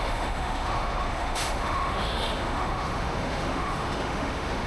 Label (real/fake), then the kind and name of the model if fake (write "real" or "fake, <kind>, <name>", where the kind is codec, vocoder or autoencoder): fake, autoencoder, DAC-VAE